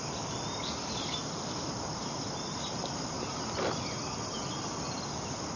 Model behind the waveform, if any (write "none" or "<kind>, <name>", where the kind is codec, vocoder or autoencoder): none